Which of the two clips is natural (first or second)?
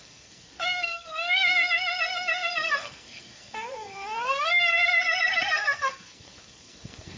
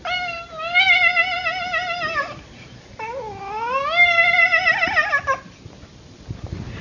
second